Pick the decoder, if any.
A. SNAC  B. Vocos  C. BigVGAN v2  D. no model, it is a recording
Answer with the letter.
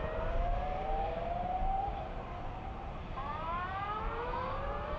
C